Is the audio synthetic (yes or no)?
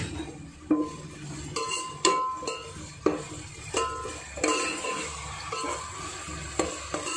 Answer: no